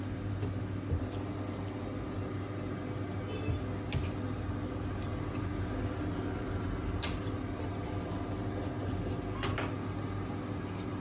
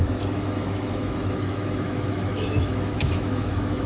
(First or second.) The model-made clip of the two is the second